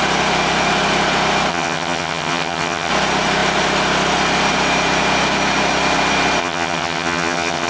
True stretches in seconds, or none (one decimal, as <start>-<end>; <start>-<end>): 0.0-1.5; 2.9-6.4